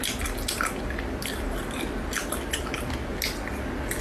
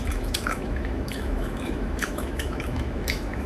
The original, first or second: first